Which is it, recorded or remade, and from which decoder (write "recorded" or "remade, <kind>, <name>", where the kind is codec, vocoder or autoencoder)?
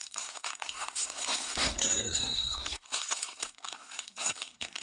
remade, codec, SNAC